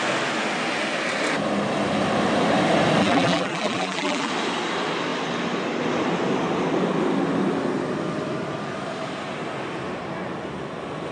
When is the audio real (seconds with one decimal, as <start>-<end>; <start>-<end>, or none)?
0.0-3.0; 4.3-11.1

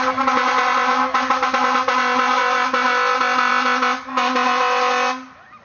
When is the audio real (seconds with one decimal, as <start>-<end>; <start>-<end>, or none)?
0.0-5.6

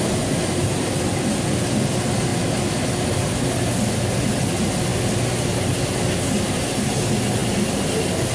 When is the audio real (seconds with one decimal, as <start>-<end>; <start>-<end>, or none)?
0.0-8.3